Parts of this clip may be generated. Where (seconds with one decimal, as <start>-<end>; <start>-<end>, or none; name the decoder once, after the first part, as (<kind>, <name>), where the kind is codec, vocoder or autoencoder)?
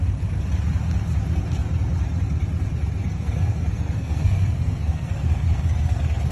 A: 3.0-6.3 (codec, SNAC)